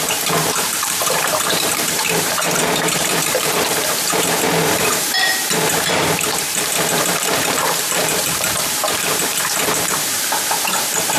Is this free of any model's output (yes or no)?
no